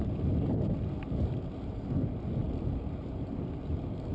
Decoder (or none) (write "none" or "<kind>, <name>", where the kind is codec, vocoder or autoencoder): none